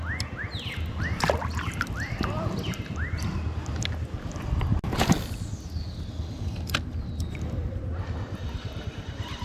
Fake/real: real